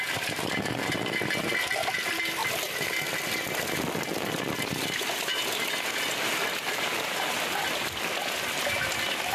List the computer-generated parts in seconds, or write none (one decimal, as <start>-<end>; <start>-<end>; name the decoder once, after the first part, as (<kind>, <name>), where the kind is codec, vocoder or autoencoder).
6.4-7.3 (vocoder, BigVGAN v2)